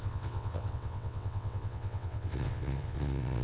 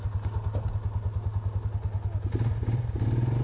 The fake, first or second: first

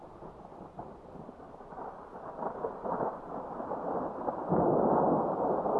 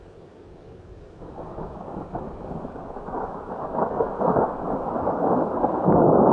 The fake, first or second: second